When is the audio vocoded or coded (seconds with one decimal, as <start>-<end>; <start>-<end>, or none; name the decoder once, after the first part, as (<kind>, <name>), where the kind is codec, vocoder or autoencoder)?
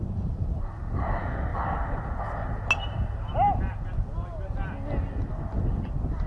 0.0-1.5 (vocoder, BigVGAN v2); 5.3-6.3